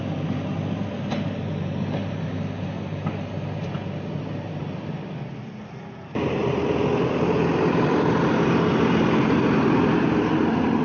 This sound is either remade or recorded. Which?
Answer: recorded